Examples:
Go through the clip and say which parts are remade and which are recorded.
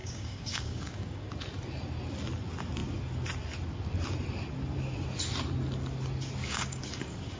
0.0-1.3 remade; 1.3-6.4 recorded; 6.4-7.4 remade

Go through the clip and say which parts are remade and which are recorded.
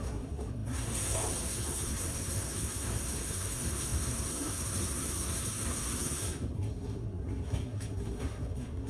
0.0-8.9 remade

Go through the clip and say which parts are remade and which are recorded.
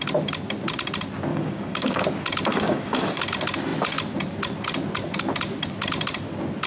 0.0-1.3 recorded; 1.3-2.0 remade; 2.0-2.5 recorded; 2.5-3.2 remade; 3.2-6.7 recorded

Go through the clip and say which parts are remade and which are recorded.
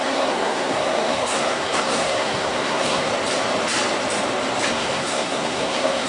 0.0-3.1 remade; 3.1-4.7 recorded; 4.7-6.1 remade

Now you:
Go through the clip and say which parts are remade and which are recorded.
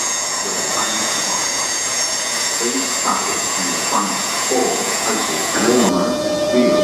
0.0-6.8 remade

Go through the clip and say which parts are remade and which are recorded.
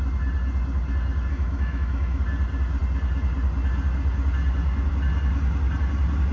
0.0-1.3 recorded; 1.3-2.2 remade; 2.2-6.3 recorded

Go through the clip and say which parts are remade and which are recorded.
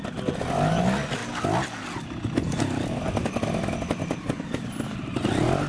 0.0-5.7 recorded